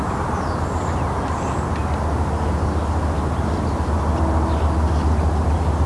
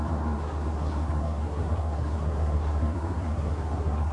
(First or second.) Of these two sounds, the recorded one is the first